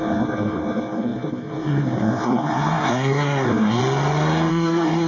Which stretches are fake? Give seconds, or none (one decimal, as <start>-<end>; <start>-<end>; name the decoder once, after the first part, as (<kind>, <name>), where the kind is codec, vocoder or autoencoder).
0.0-3.8 (codec, SNAC); 4.5-5.1